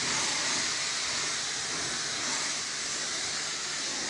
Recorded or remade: recorded